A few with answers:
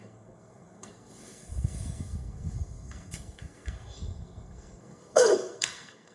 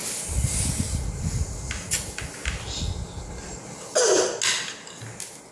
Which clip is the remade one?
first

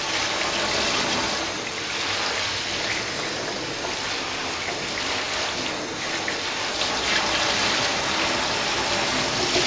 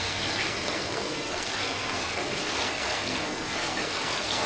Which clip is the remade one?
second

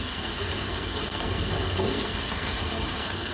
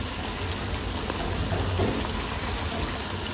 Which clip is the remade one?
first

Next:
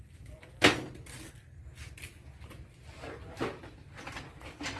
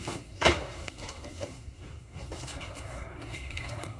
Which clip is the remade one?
second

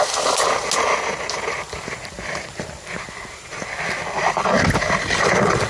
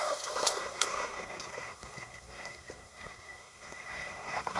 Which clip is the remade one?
second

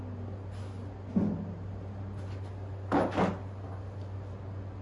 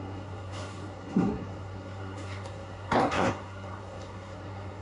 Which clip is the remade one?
second